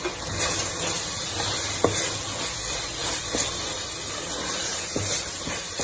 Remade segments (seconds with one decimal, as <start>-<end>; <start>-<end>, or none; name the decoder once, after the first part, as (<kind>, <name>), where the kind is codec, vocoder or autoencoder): none